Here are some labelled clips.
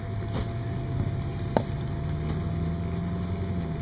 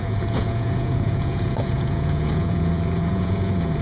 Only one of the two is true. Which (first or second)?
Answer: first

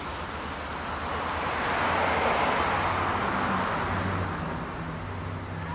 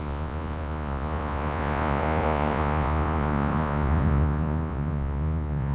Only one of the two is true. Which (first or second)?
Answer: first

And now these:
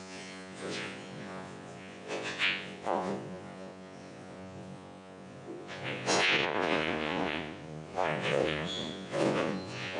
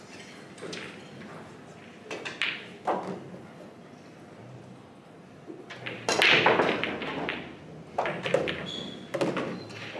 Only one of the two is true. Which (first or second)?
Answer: second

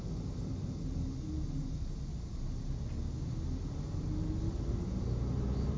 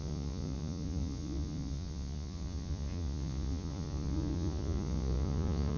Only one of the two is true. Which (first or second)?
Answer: first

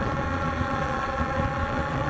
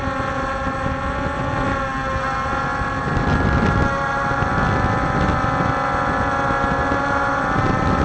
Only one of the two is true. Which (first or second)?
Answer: second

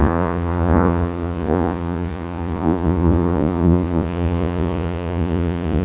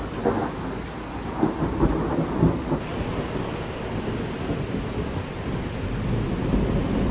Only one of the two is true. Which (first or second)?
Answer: second